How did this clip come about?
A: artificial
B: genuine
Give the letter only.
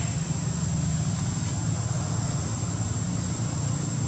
B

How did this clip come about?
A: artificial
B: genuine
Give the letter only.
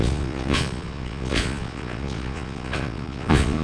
A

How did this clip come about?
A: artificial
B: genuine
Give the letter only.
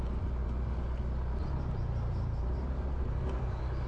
B